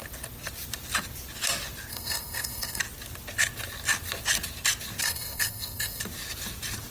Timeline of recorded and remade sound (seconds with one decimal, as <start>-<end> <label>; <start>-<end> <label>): 0.0-1.9 recorded; 1.9-2.8 remade; 2.8-5.0 recorded; 5.0-6.0 remade; 6.0-6.9 recorded